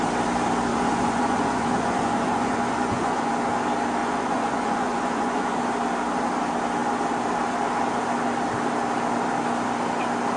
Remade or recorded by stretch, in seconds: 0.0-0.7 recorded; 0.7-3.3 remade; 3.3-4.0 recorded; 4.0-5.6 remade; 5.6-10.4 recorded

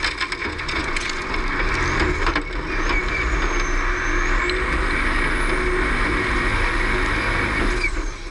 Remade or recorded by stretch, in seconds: 0.0-0.4 recorded; 0.4-1.3 remade; 1.3-8.3 recorded